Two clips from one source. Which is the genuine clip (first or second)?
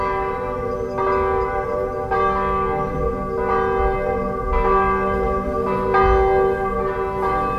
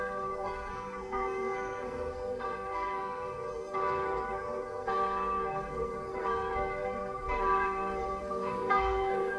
first